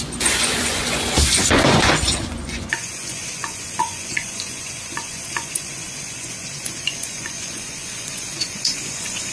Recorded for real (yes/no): no